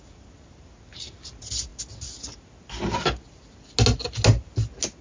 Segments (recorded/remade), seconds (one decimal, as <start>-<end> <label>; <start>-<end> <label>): 0.0-5.0 recorded